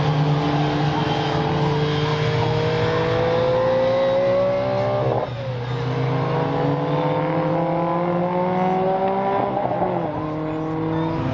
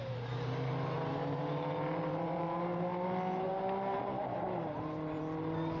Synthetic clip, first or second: second